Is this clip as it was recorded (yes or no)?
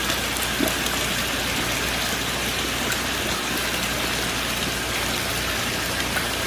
yes